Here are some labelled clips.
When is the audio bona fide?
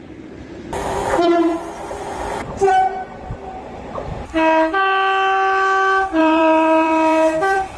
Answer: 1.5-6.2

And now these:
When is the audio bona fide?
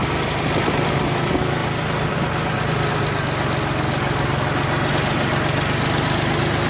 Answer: 0.0-6.7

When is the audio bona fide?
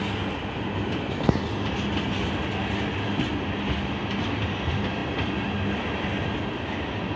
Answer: 0.0-7.2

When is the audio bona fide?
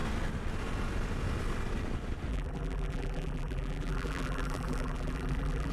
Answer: 0.0-2.3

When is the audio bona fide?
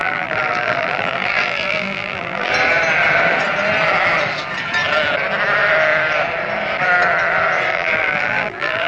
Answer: 2.5-7.7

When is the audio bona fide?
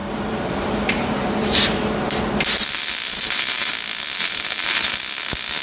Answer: 2.2-3.1; 3.7-4.2; 5.0-5.6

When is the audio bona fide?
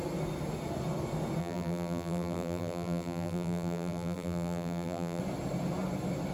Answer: 0.0-1.4; 5.2-6.3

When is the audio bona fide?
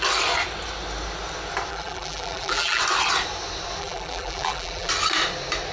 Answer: 0.0-1.7; 2.8-3.8; 4.9-5.7